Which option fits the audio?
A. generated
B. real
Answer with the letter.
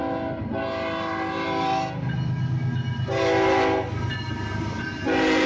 B